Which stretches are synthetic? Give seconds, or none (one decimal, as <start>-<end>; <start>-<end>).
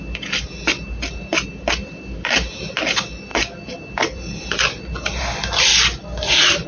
none